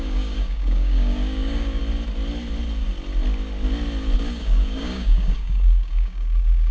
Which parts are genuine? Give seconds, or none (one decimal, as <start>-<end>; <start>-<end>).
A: 1.8-4.4